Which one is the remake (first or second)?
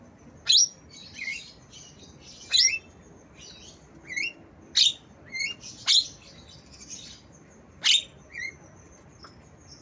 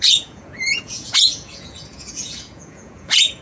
second